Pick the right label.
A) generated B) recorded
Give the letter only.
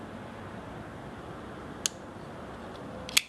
B